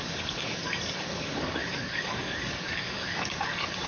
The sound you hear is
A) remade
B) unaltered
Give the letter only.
A